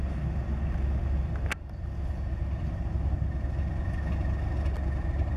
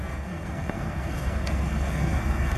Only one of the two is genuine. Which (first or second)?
first